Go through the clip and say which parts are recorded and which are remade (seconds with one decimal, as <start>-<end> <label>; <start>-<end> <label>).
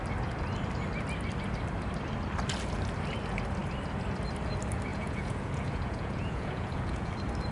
0.0-4.9 recorded; 4.9-7.1 remade; 7.1-7.5 recorded